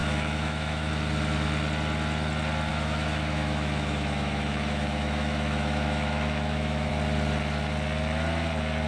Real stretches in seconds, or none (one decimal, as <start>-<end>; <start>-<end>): 0.9-2.7; 6.9-8.9